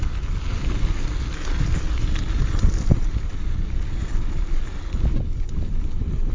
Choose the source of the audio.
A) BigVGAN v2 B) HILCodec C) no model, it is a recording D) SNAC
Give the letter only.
C